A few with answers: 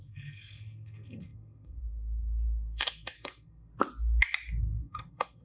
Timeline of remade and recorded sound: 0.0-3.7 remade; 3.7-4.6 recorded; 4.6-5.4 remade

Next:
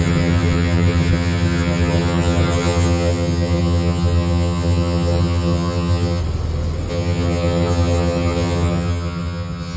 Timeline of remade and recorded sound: 0.0-6.2 remade; 6.2-6.9 recorded; 6.9-9.8 remade

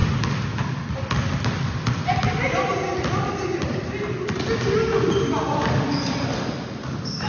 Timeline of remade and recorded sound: 0.0-7.3 recorded

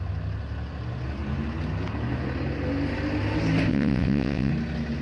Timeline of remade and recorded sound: 0.0-3.7 recorded; 3.7-4.5 remade; 4.5-5.0 recorded

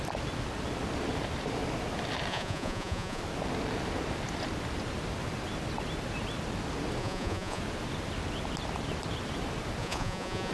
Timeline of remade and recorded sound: 0.0-2.3 recorded; 2.3-3.2 remade; 3.2-7.0 recorded; 7.0-7.6 remade; 7.6-9.8 recorded; 9.8-10.5 remade